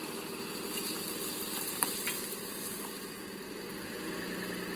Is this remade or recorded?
recorded